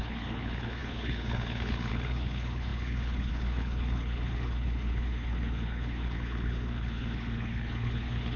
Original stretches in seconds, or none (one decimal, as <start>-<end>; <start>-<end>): none